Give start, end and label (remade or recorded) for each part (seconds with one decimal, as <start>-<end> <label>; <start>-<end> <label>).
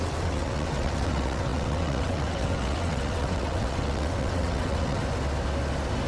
0.0-5.0 remade; 5.0-6.1 recorded